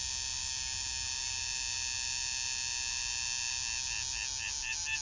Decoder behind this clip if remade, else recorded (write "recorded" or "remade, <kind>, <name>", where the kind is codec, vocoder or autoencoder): recorded